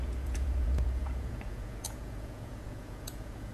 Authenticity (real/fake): fake